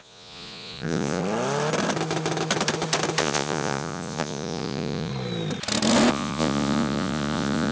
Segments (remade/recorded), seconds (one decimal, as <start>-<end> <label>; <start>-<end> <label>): 0.0-1.2 remade; 1.2-3.2 recorded; 3.2-5.1 remade; 5.1-6.1 recorded; 6.1-7.7 remade